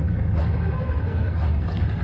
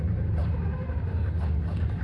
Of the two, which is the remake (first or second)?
first